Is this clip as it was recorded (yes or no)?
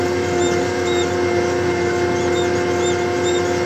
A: yes